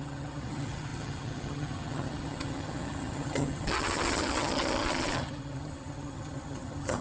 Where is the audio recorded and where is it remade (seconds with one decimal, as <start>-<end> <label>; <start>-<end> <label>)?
0.0-7.0 remade